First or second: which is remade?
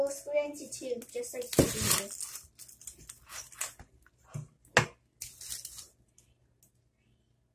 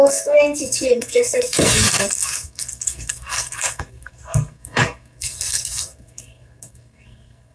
second